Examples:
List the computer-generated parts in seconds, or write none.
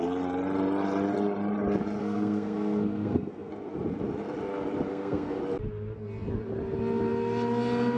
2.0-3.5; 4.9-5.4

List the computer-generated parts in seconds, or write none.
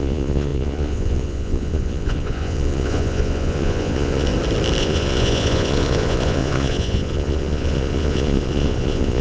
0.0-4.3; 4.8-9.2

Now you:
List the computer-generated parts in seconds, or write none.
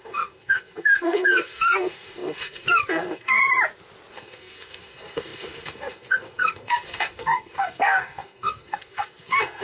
0.0-3.4; 4.1-9.6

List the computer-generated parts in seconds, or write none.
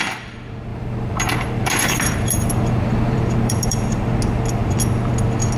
0.7-4.1